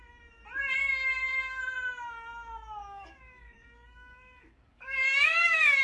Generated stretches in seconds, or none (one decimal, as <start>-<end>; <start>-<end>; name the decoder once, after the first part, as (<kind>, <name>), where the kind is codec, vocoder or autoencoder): 2.8-5.8 (codec, DAC)